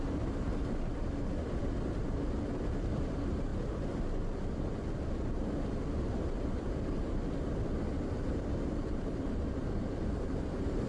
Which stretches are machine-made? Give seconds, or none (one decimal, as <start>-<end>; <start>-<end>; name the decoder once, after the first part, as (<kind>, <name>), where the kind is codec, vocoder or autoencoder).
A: 0.0-0.5 (vocoder, BigVGAN v2); 1.6-3.5; 8.1-10.9